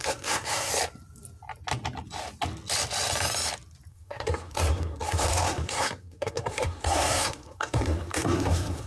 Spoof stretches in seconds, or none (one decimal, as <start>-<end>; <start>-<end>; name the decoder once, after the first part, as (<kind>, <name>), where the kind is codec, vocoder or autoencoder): 0.0-0.7 (codec, SNAC); 3.9-8.9